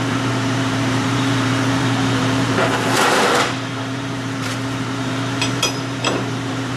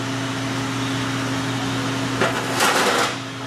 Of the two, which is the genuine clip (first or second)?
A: second